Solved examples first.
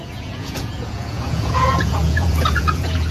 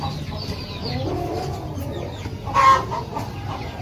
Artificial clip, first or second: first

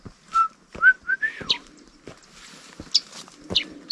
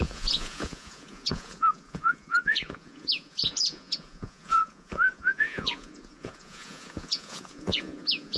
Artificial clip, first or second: second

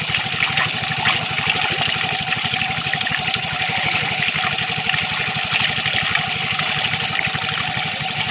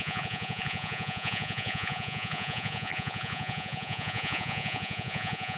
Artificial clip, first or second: second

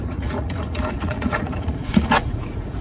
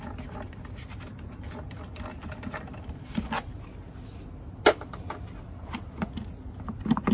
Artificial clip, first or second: first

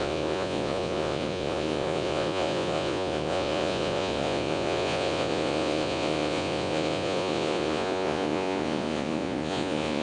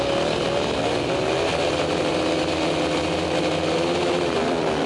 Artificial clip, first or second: first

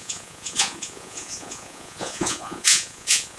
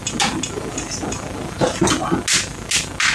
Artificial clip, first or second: first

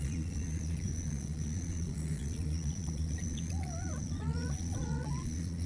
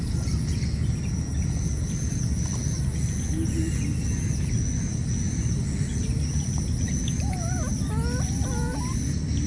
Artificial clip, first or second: first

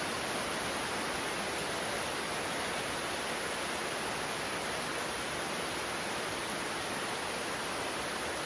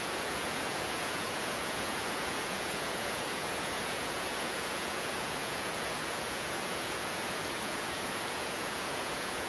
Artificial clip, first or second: second